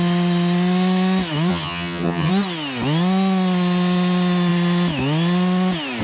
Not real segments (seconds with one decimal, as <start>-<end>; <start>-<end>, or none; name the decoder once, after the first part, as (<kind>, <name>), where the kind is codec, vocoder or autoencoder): 1.5-2.3 (vocoder, HiFi-GAN)